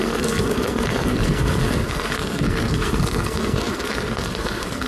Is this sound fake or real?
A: fake